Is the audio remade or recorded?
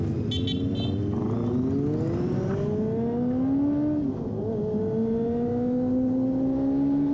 recorded